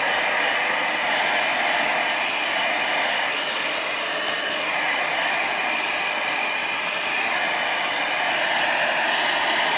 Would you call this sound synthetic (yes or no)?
yes